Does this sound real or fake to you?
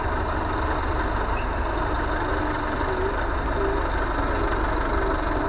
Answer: real